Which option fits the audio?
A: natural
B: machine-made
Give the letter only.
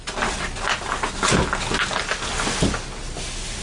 A